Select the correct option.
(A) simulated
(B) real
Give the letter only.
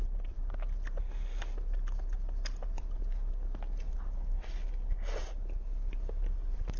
B